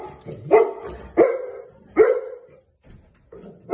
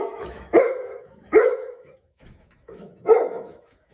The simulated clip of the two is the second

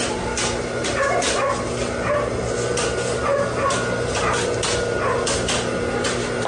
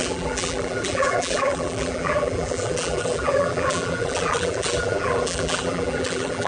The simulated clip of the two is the second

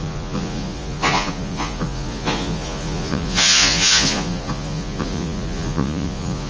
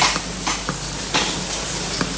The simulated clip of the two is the first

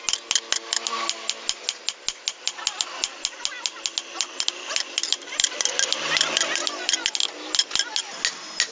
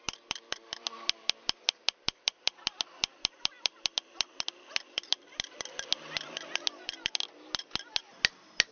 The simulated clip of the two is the second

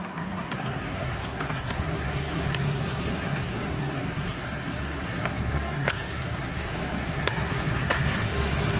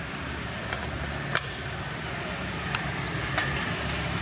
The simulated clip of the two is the first